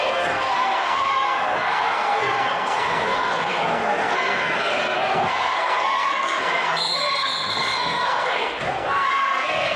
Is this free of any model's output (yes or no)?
no